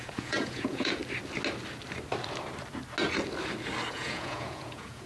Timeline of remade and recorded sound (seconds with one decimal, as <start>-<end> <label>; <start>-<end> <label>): 0.0-1.0 remade; 1.0-3.9 recorded; 3.9-5.1 remade